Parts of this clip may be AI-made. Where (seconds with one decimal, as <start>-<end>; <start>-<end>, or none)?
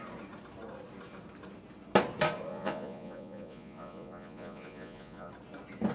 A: 2.5-5.3